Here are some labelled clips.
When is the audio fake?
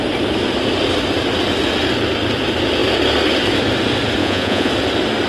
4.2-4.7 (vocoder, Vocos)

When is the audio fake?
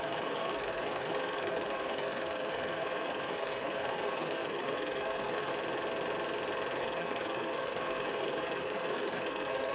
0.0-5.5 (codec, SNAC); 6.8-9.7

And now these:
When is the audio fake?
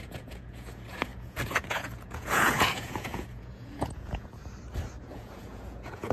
0.0-4.4 (vocoder, Vocos); 5.0-6.1